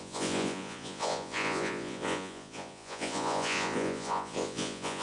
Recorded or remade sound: remade